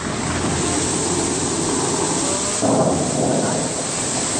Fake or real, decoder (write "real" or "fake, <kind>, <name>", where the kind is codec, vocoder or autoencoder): real